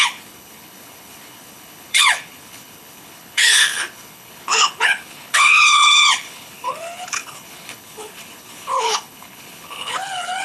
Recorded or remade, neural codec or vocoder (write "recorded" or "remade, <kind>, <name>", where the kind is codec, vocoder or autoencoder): remade, codec, HILCodec